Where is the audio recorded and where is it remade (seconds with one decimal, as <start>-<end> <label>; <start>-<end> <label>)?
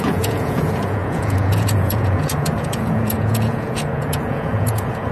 0.0-5.1 remade